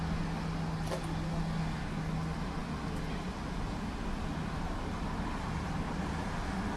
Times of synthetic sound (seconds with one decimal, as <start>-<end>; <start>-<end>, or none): none